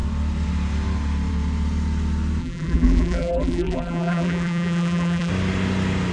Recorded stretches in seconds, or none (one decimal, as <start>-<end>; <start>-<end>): 0.0-2.4; 5.3-6.1